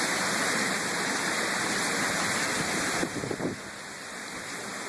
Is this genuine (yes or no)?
yes